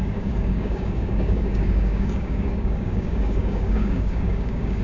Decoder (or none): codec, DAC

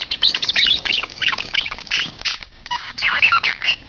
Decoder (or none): codec, DAC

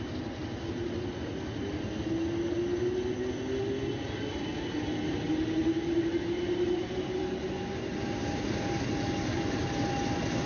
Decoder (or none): none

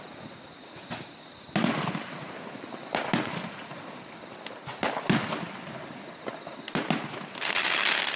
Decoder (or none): none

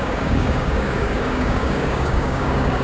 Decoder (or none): codec, DAC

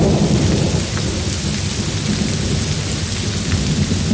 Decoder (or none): none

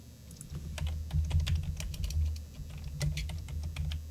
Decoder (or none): none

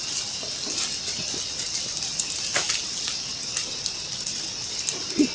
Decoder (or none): none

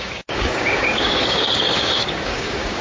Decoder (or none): codec, DAC